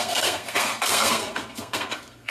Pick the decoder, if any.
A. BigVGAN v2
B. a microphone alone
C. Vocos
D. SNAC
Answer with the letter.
D